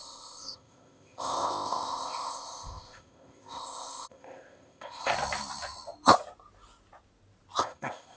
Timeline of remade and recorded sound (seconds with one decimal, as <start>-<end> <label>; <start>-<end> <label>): 0.0-5.1 remade; 5.1-7.6 recorded; 7.6-8.2 remade